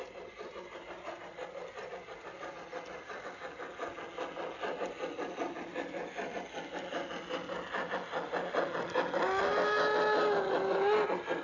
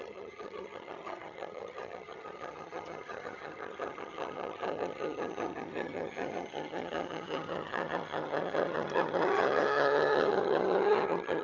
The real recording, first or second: first